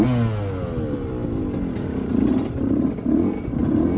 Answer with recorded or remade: recorded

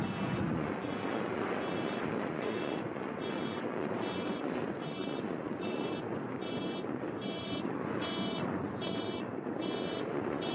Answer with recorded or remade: remade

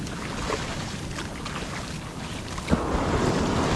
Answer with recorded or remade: recorded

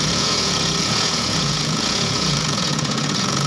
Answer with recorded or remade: remade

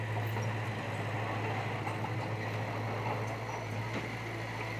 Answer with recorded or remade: recorded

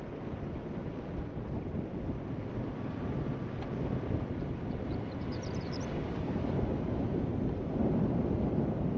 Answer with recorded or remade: recorded